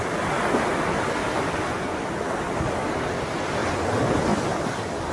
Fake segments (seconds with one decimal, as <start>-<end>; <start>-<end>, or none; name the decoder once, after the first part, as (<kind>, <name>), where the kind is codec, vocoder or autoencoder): 1.2-2.0 (vocoder, BigVGAN v2); 4.3-5.1